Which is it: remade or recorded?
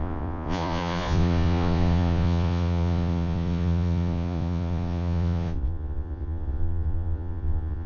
remade